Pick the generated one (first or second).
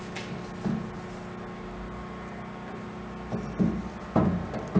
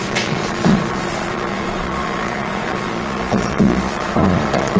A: second